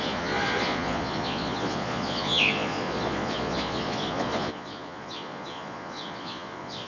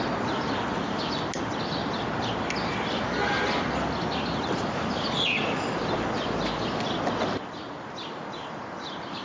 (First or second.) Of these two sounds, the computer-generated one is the first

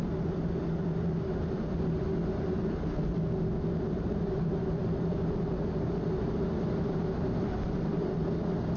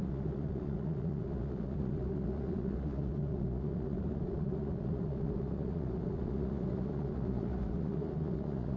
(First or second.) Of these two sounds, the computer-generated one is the second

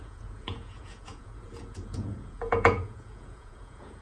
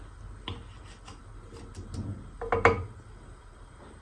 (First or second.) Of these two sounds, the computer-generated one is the first